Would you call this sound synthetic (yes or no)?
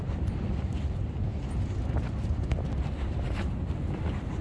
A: no